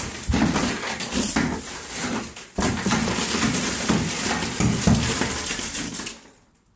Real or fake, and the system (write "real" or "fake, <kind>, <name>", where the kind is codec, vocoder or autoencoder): real